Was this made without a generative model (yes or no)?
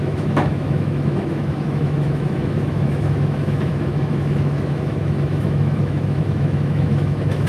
no